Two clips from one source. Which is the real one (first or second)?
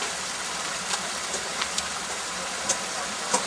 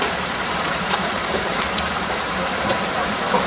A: first